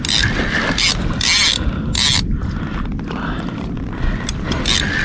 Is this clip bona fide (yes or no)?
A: yes